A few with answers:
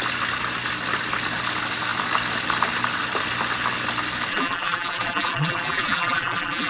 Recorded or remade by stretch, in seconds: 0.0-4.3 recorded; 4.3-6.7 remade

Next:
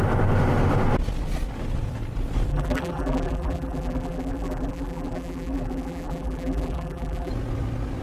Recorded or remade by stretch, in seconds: 0.0-2.5 recorded; 2.5-7.3 remade; 7.3-8.0 recorded

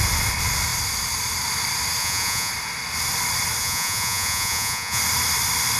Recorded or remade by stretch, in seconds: 0.0-2.0 recorded; 2.0-2.5 remade; 2.5-3.6 recorded; 3.6-5.0 remade; 5.0-5.8 recorded

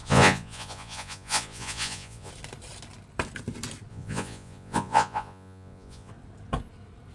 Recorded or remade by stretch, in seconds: 0.0-2.3 remade; 2.3-3.9 recorded; 3.9-6.1 remade; 6.1-7.1 recorded

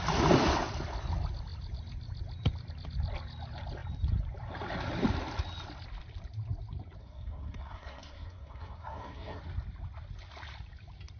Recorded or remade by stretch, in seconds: 0.0-7.0 recorded; 7.0-9.4 remade; 9.4-11.2 recorded